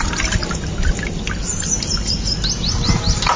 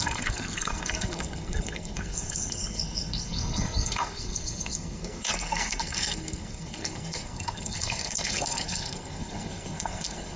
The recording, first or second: first